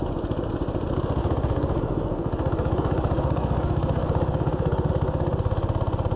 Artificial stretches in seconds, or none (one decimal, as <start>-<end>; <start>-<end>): 1.2-4.9